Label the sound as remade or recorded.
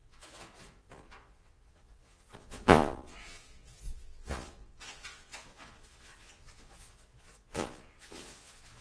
remade